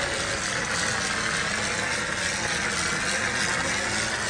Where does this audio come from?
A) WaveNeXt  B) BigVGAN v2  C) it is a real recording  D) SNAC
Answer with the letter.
C